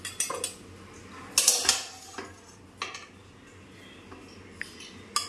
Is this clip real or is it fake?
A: real